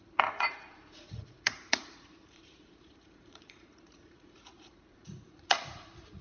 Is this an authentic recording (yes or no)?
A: no